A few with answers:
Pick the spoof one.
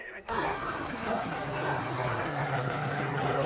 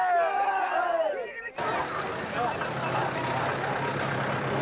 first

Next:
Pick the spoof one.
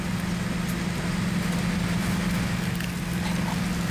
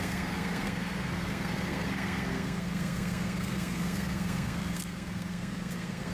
second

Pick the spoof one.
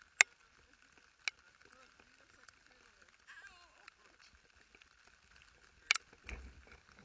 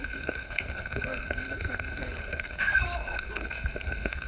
second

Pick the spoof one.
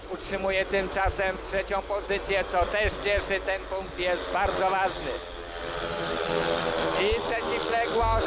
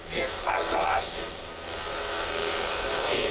second